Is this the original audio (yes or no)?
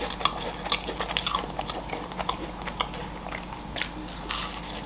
yes